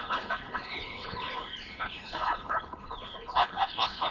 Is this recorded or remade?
remade